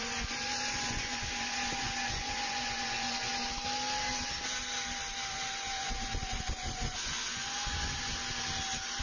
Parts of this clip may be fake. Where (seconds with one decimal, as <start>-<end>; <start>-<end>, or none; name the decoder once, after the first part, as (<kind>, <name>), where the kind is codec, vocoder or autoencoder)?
0.0-3.3 (vocoder, Vocos); 5.3-8.1